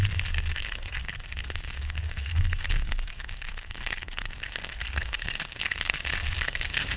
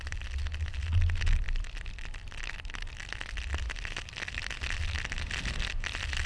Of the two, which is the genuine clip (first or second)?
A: second